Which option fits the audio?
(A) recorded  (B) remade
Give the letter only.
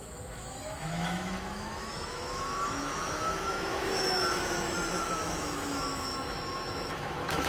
B